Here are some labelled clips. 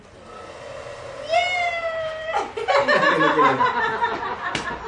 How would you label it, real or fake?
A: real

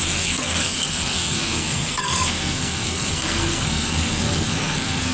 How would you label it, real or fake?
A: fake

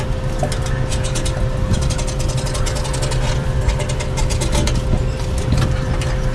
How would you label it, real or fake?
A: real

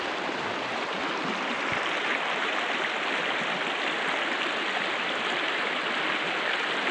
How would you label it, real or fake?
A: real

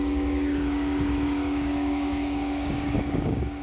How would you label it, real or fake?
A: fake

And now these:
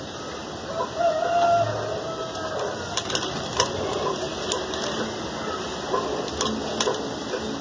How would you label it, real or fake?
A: real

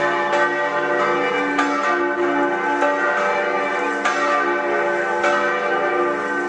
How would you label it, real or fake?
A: real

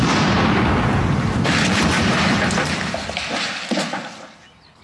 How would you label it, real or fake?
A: real